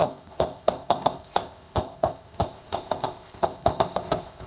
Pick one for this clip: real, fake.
fake